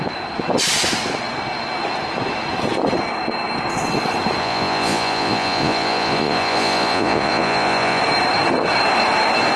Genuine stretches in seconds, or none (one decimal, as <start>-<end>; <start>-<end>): 0.0-4.4; 8.0-9.6